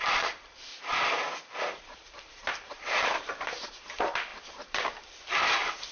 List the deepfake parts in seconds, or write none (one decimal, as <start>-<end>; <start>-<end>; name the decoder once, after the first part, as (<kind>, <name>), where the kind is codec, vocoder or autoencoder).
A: 0.0-0.7 (vocoder, BigVGAN v2); 1.7-5.9